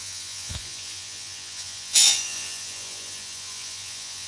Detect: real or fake fake